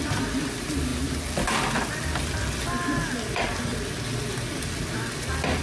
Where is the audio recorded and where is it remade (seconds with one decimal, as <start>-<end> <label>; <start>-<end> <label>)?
0.0-5.6 recorded